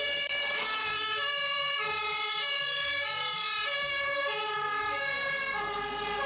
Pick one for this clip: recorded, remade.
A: remade